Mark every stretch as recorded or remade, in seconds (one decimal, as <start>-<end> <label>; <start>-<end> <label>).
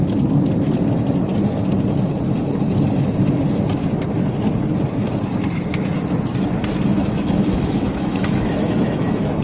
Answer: 0.0-6.9 recorded; 6.9-9.4 remade